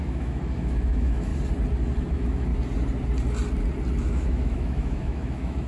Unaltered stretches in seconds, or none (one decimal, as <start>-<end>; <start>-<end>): 1.3-2.1; 2.5-4.1